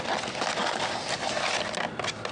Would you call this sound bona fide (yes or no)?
yes